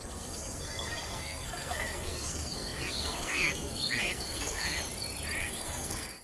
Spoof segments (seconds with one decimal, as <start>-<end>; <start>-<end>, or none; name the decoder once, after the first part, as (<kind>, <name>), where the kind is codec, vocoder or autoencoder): 0.0-4.8 (codec, SNAC); 5.4-6.2